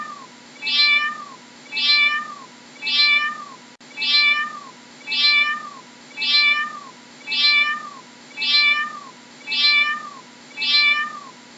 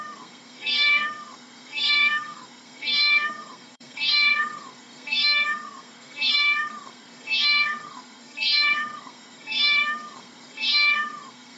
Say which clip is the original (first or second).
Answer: first